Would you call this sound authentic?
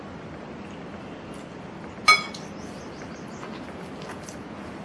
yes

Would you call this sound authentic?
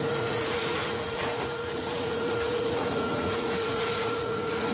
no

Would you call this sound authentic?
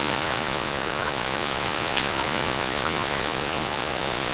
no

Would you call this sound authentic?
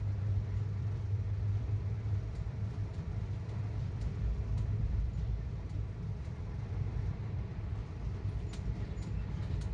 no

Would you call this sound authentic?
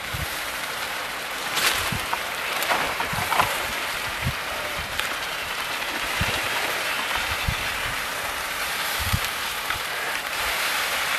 no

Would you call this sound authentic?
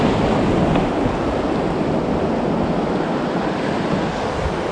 yes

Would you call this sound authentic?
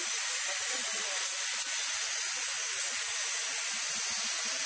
yes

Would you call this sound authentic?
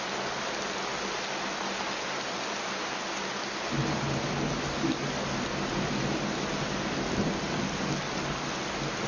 yes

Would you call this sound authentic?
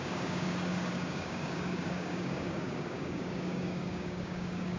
no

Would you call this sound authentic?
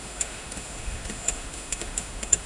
no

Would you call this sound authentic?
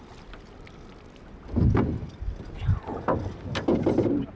yes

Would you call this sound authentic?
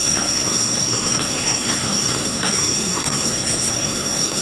no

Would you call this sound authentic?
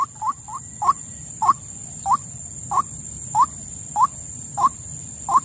yes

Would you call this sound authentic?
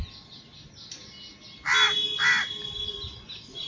yes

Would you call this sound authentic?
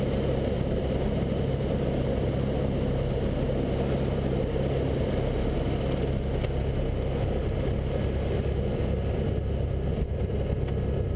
yes